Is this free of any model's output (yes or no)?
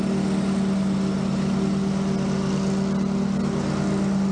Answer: yes